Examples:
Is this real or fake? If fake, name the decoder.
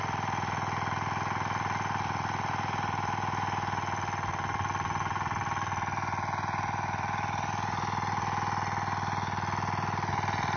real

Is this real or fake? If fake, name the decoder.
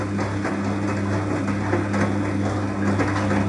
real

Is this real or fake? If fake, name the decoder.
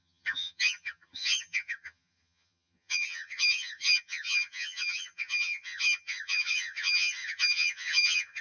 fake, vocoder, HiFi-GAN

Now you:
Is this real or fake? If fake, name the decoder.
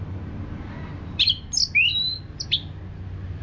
real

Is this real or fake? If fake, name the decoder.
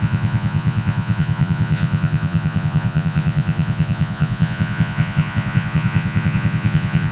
fake, vocoder, Vocos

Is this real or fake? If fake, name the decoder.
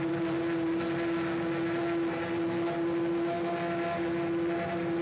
real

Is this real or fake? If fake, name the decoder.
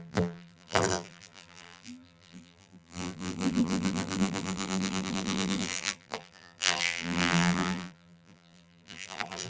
fake, vocoder, BigVGAN v2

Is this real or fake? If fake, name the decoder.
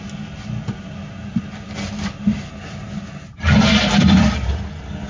real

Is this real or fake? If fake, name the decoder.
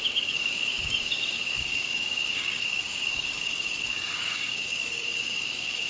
fake, codec, DAC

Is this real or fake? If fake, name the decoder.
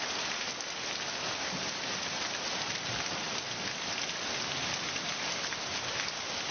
real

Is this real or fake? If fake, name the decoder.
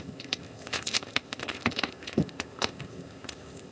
fake, codec, ZipCodec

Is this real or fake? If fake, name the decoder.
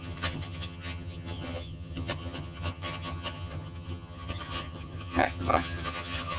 fake, vocoder, HiFi-GAN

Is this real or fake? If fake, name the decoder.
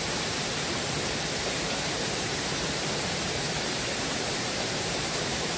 fake, vocoder, BigVGAN v2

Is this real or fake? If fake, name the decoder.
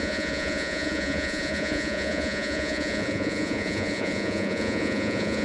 fake, vocoder, Vocos